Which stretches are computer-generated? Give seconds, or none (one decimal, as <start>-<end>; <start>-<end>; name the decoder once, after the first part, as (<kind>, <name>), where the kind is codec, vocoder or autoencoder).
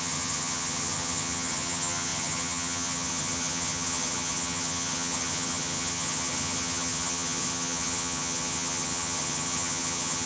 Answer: 0.0-10.3 (vocoder, HiFi-GAN)